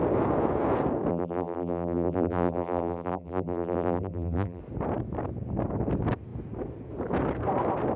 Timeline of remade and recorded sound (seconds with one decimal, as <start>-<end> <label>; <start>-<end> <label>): 0.0-1.1 recorded; 1.1-4.6 remade; 4.6-8.0 recorded